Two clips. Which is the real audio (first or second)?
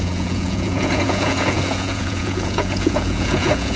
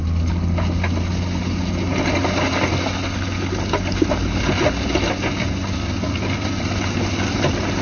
second